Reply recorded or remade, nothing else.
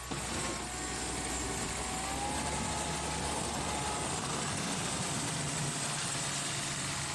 recorded